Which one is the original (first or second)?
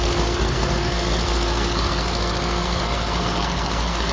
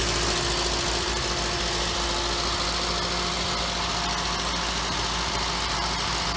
second